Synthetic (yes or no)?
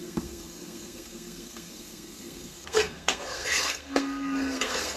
yes